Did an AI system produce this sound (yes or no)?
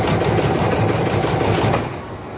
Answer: no